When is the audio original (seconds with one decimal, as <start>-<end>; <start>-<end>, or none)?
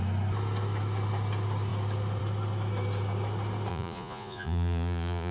0.0-3.7